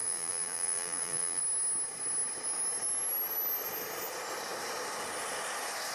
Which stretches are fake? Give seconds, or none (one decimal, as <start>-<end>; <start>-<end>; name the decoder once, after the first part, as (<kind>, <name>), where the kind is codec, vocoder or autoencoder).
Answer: 0.0-1.4 (vocoder, BigVGAN v2)